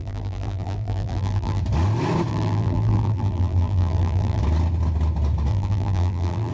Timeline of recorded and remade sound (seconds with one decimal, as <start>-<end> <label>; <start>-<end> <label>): 0.0-1.6 remade; 1.6-2.3 recorded; 2.3-4.4 remade; 4.4-5.5 recorded; 5.5-6.5 remade